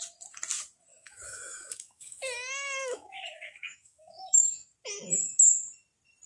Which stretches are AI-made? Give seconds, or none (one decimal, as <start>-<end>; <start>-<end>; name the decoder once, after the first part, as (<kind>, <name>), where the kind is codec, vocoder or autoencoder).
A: 0.9-4.7 (autoencoder, DAC-VAE)